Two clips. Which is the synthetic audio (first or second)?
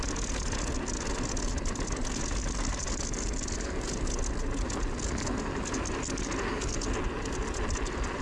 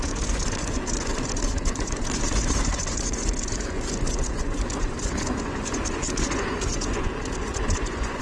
second